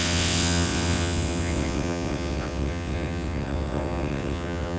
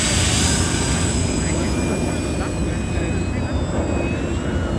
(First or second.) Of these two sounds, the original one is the second